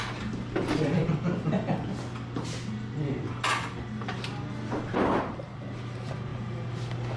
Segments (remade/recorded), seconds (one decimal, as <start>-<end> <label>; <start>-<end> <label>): 0.0-7.2 recorded

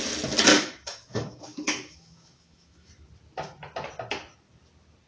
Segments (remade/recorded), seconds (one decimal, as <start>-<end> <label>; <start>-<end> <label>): 0.0-0.5 recorded; 0.5-2.9 remade; 2.9-5.1 recorded